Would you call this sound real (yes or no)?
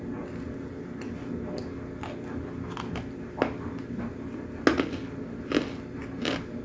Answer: yes